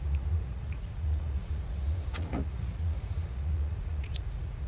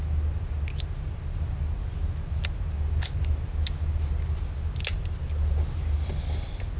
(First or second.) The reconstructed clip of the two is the first